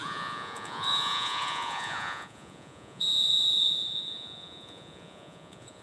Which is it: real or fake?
fake